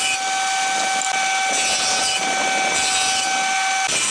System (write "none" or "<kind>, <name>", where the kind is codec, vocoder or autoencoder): none